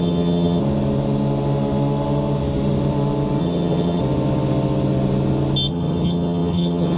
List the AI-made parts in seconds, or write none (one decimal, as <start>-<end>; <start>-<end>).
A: 0.0-0.6; 3.4-4.0; 5.7-7.0